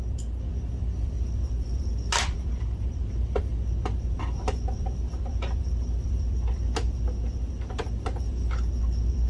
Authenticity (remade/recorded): remade